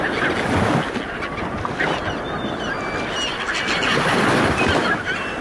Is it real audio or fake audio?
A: real